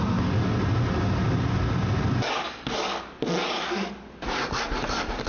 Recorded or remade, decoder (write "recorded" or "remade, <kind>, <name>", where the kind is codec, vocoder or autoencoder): recorded